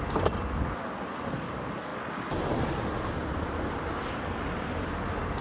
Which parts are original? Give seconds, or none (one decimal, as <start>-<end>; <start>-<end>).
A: 0.0-5.4